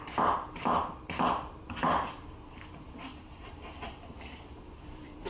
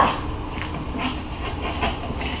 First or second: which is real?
second